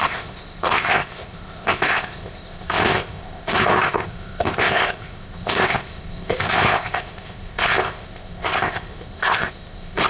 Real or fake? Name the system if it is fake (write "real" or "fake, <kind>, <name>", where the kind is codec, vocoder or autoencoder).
fake, codec, ZipCodec